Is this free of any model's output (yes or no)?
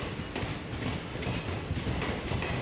yes